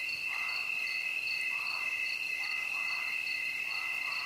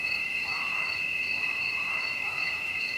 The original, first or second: first